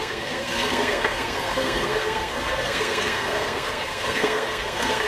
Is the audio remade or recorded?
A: remade